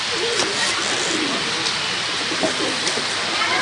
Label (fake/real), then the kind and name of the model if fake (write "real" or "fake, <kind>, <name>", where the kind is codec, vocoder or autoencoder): real